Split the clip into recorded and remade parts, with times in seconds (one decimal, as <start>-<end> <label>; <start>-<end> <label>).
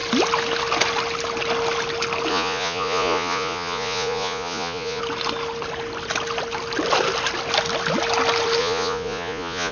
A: 0.0-2.3 recorded; 2.3-5.0 remade; 5.0-8.6 recorded; 8.6-9.7 remade